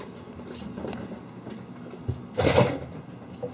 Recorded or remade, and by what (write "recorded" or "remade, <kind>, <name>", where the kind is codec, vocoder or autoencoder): recorded